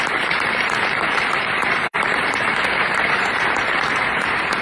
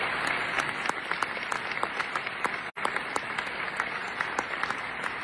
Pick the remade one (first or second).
first